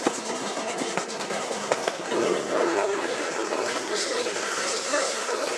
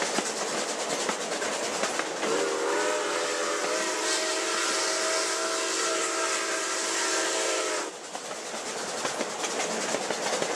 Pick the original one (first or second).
second